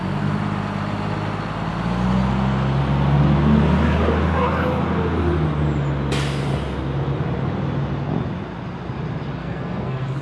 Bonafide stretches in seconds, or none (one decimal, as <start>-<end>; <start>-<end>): 0.0-9.4